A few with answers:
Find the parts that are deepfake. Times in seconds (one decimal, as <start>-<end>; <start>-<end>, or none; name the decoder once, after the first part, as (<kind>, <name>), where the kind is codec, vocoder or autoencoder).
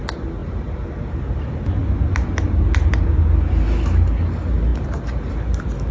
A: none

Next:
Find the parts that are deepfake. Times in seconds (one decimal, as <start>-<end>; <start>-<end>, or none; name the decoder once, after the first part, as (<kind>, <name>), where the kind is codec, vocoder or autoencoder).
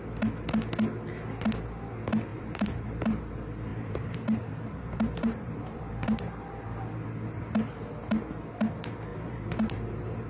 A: 2.3-3.2 (vocoder, BigVGAN v2); 3.7-6.3; 9.1-10.3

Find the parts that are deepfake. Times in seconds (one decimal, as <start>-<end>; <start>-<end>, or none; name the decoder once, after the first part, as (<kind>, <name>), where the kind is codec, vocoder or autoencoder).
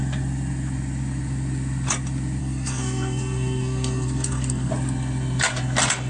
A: 2.4-4.7 (codec, SNAC)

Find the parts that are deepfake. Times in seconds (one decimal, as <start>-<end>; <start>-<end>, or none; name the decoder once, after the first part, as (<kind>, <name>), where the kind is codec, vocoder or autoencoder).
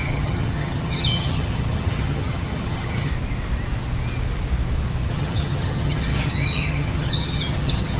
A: 0.0-3.1 (vocoder, HiFi-GAN); 5.1-8.0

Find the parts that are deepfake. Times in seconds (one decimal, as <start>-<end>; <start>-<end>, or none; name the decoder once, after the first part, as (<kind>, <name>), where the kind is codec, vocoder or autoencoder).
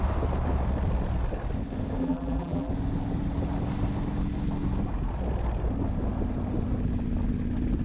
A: 2.0-2.7 (vocoder, BigVGAN v2)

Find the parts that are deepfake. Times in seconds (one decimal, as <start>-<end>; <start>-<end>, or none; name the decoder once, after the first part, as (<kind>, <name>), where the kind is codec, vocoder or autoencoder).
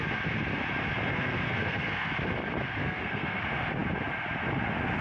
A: 1.1-2.1 (codec, SNAC); 2.8-3.4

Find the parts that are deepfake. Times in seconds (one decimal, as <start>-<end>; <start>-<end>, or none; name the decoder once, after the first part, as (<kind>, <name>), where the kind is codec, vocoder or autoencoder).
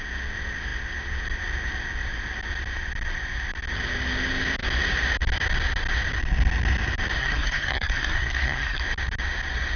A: 7.2-8.8 (codec, SNAC)